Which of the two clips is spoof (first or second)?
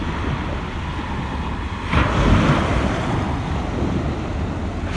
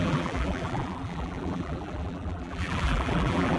second